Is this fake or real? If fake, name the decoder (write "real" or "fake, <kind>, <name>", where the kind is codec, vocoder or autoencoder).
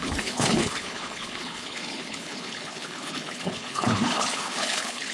fake, codec, HILCodec